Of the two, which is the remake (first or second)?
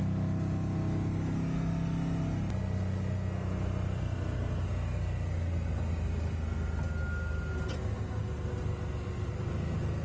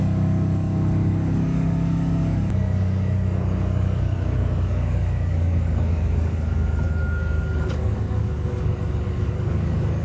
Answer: second